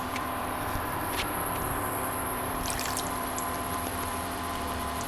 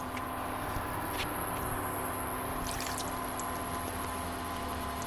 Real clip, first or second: second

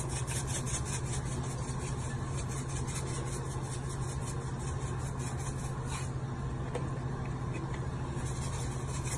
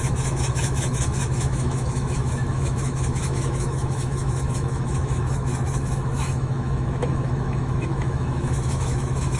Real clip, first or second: first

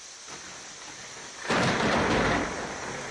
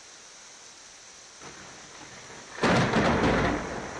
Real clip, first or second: second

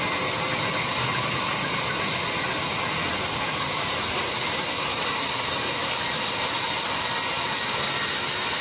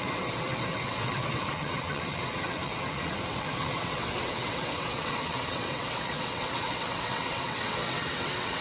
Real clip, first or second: first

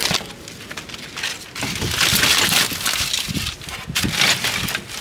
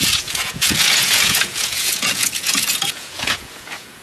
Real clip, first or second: first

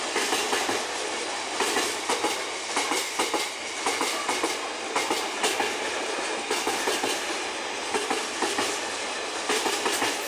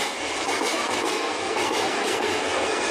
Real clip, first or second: first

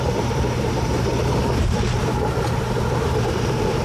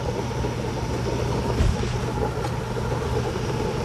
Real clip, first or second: second